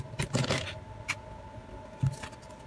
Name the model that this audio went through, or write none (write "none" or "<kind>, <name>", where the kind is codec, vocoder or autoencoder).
none